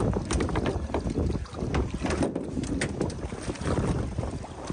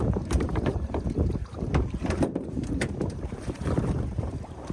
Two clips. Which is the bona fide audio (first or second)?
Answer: first